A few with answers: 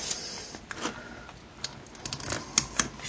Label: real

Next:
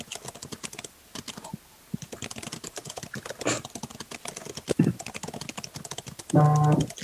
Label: real